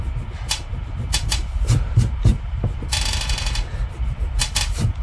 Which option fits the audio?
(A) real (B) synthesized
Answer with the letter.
B